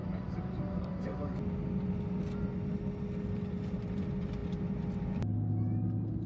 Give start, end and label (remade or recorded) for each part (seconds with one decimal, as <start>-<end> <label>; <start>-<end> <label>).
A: 0.0-6.3 recorded

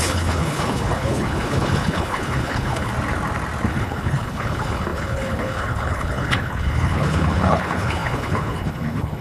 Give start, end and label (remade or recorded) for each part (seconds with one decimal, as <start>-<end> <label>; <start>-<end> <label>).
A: 0.0-2.9 remade; 2.9-3.7 recorded; 3.7-9.2 remade

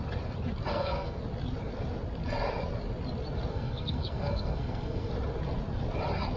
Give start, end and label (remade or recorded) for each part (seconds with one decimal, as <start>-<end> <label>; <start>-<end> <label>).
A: 0.0-0.7 recorded; 0.7-1.2 remade; 1.2-3.5 recorded; 3.5-5.1 remade; 5.1-6.4 recorded

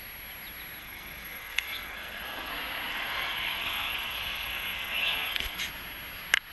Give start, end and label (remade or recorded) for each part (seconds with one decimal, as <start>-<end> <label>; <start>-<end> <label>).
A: 0.0-0.8 recorded; 0.8-2.5 remade; 2.5-2.9 recorded; 2.9-5.6 remade; 5.6-6.5 recorded

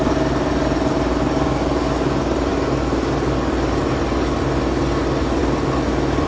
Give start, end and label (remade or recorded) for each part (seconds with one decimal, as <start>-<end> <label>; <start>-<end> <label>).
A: 0.0-6.3 recorded

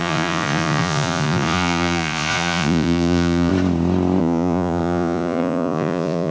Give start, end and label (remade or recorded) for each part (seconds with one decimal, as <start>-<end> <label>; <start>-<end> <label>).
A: 0.0-3.5 remade; 3.5-4.2 recorded; 4.2-6.3 remade

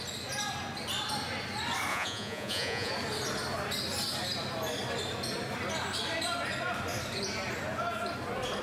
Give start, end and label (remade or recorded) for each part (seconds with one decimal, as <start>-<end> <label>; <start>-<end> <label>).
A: 0.0-1.9 recorded; 1.9-2.9 remade; 2.9-8.6 recorded

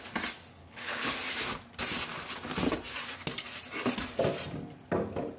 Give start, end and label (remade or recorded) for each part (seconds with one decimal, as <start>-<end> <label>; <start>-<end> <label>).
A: 0.0-0.6 recorded; 0.6-1.1 remade; 1.1-5.4 recorded